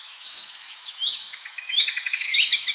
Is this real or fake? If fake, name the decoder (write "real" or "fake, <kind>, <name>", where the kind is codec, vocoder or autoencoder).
fake, autoencoder, DAC-VAE